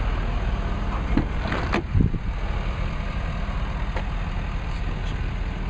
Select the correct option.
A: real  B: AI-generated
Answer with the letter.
A